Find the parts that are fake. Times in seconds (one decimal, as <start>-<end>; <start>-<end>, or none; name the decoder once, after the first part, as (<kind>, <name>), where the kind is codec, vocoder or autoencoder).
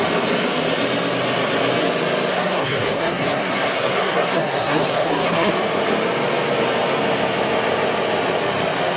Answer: 2.3-5.5 (codec, SNAC)